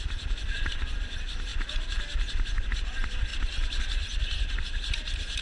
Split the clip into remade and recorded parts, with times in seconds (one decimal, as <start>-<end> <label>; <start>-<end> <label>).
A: 0.0-5.4 recorded